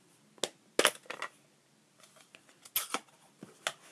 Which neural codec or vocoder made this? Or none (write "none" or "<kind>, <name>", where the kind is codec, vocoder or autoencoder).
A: none